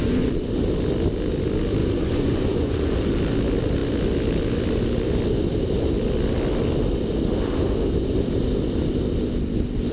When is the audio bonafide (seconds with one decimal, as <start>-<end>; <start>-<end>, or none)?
0.5-1.8; 2.9-9.9